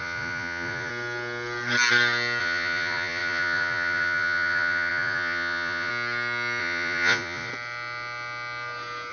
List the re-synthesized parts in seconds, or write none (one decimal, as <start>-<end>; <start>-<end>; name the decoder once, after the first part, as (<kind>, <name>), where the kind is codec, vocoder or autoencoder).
0.0-0.9 (vocoder, Vocos); 2.4-5.9; 6.6-7.5